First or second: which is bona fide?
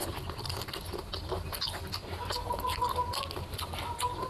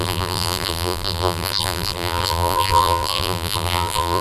first